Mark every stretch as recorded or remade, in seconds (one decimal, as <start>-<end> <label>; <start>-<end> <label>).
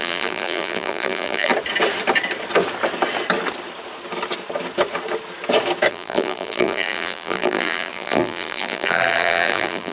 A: 0.0-1.5 remade; 1.5-5.9 recorded; 5.9-9.9 remade